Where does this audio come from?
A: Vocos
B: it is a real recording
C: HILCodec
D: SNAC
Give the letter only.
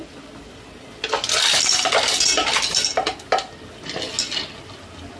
B